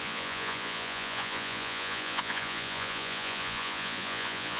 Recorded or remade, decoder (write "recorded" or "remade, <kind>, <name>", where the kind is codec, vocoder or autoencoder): remade, vocoder, Vocos